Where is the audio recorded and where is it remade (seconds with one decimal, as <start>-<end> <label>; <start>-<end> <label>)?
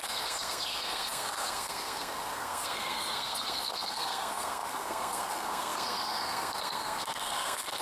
0.0-7.8 remade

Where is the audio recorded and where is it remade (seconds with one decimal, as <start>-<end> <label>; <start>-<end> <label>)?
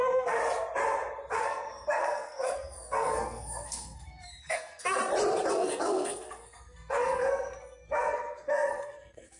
0.0-0.4 remade; 0.4-1.3 recorded; 1.3-5.0 remade; 5.0-5.5 recorded; 5.5-9.4 remade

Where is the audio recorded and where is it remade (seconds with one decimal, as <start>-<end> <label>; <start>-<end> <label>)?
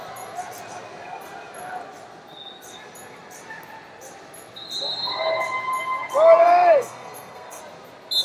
0.0-6.4 recorded; 6.4-7.6 remade; 7.6-8.2 recorded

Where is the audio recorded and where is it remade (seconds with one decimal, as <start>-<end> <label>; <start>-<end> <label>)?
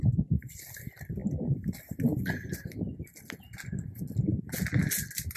0.0-5.4 recorded